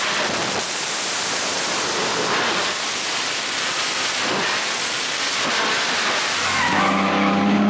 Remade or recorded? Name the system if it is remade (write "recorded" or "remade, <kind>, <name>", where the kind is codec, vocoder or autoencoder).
recorded